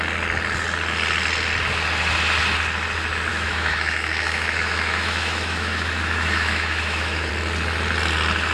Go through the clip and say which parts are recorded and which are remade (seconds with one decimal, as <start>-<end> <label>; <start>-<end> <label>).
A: 0.0-3.3 recorded; 3.3-7.3 remade; 7.3-8.5 recorded